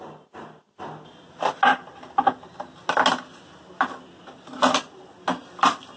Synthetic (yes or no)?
no